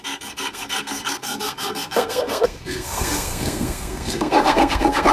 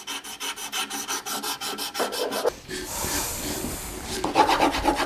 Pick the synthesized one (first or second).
first